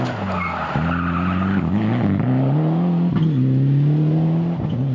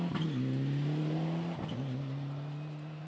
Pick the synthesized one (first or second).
second